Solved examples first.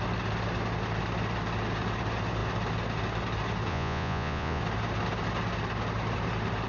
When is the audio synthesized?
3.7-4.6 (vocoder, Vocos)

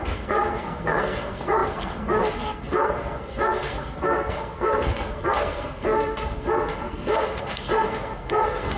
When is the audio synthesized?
0.0-8.8 (codec, SNAC)